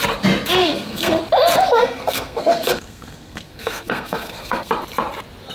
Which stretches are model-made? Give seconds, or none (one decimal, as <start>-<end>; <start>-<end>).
0.6-1.2; 1.8-4.7